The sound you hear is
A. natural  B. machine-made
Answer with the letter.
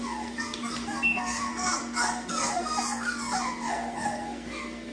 B